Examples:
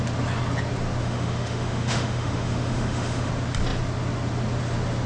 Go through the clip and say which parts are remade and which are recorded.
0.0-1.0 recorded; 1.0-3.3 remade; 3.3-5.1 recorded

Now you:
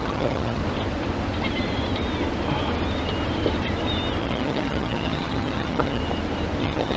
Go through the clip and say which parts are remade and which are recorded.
0.0-0.6 remade; 0.6-4.2 recorded; 4.2-6.0 remade; 6.0-6.6 recorded; 6.6-7.0 remade